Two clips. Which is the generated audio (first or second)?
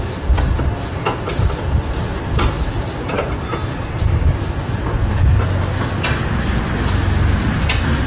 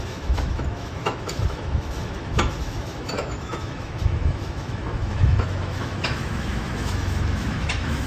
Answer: second